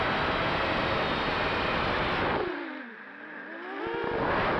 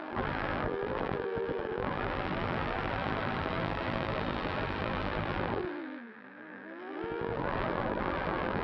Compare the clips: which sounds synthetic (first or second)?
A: second